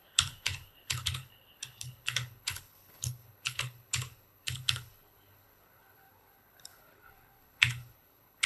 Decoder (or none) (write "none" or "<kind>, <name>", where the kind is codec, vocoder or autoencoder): codec, HILCodec